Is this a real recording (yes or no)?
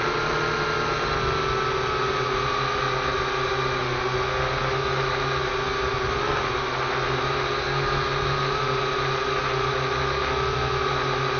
yes